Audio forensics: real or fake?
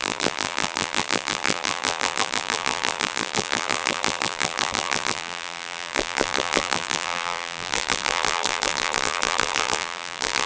fake